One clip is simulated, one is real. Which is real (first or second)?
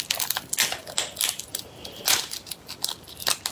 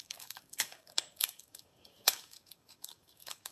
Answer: first